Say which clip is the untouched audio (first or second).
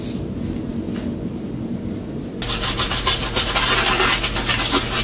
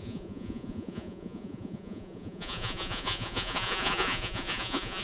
first